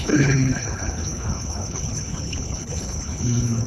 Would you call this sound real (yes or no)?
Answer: no